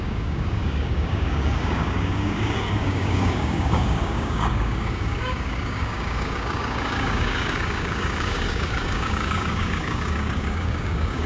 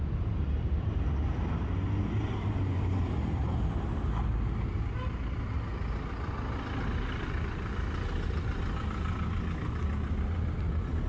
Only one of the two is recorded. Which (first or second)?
second